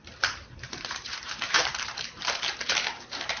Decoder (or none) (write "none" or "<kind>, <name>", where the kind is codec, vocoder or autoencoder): vocoder, BigVGAN v2